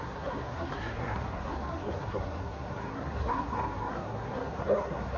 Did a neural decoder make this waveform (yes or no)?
yes